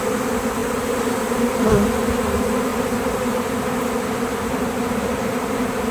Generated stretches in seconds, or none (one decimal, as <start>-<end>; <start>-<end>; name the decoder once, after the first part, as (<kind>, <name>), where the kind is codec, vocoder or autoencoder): 0.6-1.4 (vocoder, BigVGAN v2)